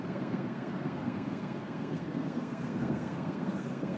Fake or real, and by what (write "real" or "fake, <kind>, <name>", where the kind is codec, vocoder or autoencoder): fake, codec, SNAC